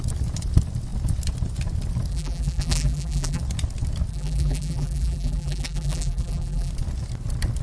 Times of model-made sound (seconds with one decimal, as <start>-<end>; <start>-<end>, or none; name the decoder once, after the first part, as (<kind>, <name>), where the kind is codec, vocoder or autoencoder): 2.1-3.4 (vocoder, BigVGAN v2); 4.1-6.7